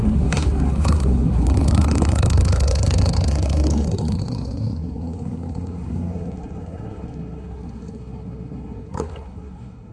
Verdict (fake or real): fake